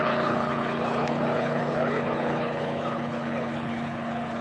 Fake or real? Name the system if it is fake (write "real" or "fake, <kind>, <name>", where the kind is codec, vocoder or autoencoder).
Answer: fake, codec, HILCodec